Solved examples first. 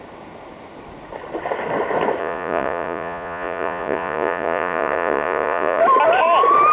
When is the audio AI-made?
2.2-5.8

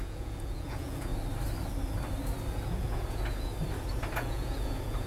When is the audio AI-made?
0.0-1.1; 2.5-3.5; 4.1-5.1